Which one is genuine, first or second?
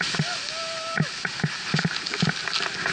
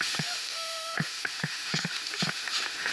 first